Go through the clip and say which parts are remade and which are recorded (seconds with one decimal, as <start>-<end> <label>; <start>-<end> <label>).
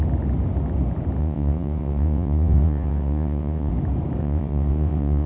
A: 0.0-1.2 recorded; 1.2-3.7 remade; 3.7-4.2 recorded; 4.2-5.3 remade